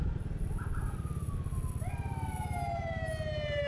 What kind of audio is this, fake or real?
real